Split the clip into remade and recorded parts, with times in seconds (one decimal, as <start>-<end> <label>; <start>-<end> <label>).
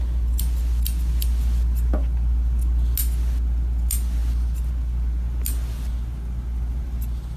0.0-7.4 recorded